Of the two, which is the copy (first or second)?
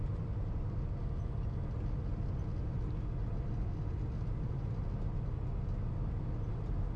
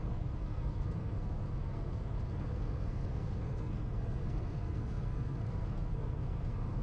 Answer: second